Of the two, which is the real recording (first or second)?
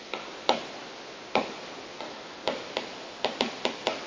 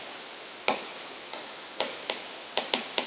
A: second